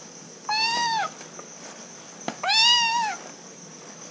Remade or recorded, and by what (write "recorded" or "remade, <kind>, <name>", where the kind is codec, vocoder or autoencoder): remade, codec, DAC